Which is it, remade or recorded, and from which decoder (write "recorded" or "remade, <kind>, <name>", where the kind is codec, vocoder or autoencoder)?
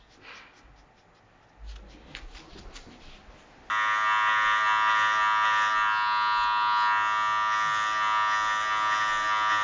recorded